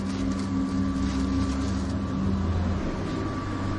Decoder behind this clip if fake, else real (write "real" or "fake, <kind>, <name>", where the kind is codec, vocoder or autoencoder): real